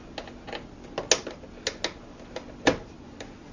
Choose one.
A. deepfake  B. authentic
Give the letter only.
B